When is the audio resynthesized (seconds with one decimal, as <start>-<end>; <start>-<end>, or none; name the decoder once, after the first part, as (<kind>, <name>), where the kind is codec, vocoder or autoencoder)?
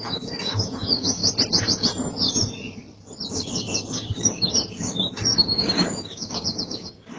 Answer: 0.0-1.2 (codec, DAC); 3.3-7.2